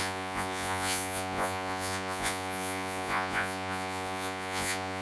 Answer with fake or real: fake